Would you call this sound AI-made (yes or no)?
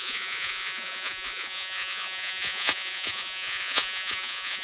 yes